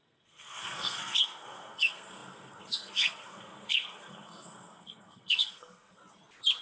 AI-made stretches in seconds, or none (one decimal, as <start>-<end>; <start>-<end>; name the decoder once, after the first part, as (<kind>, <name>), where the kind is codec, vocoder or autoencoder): 0.0-6.0 (codec, SNAC)